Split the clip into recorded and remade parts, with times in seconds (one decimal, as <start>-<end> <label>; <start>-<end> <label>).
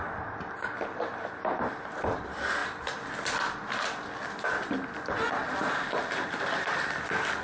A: 0.0-7.4 recorded